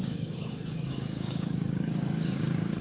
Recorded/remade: remade